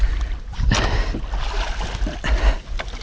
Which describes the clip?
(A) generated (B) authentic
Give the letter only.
B